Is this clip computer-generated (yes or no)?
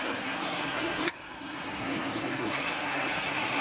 yes